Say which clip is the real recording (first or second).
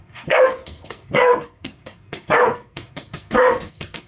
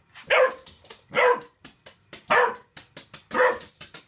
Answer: second